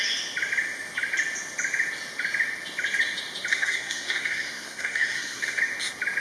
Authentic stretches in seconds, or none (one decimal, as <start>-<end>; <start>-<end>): 0.0-3.5; 5.6-6.2